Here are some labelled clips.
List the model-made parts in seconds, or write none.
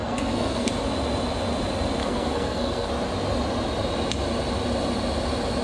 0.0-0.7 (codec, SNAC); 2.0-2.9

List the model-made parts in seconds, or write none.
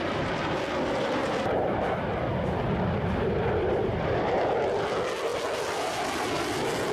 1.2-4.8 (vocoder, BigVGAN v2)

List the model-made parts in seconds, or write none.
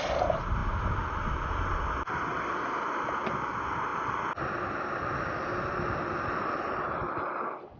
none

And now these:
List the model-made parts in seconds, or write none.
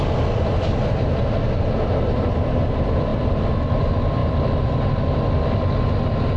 3.1-3.8 (vocoder, BigVGAN v2); 4.2-4.9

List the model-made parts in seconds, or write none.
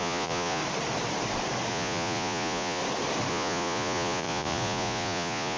0.0-0.6 (vocoder, Vocos); 1.7-2.8; 3.3-5.6